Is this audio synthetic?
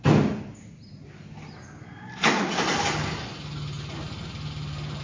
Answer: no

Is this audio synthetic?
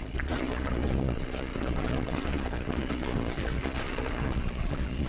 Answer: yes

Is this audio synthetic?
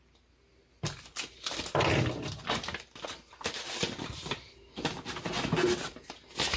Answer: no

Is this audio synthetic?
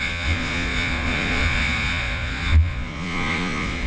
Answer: yes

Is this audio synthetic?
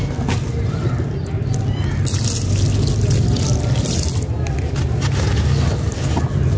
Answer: no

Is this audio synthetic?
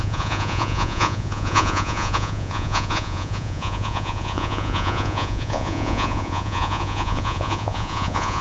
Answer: yes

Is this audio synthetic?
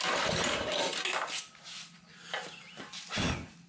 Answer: no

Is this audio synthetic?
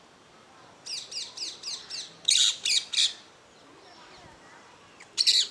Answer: no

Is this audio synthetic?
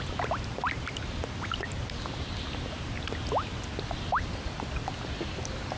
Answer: no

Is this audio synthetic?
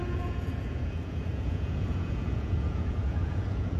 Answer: yes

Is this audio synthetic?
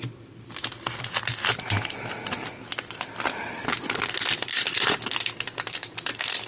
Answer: no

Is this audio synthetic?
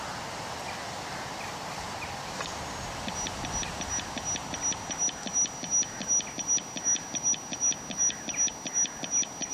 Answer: no